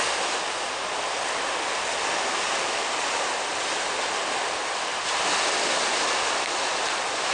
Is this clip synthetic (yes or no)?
no